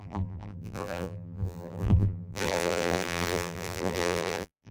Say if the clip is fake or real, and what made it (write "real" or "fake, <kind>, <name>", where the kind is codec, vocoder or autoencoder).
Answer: fake, vocoder, BigVGAN v2